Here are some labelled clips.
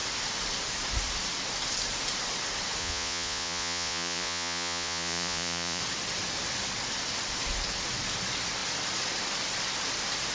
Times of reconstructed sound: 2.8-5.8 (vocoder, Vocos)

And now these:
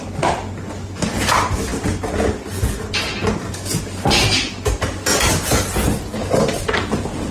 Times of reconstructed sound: none

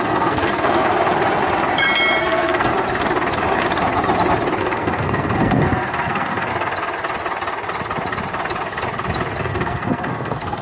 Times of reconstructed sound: 0.0-0.9 (codec, SNAC); 2.2-2.7; 4.6-6.5; 9.4-10.6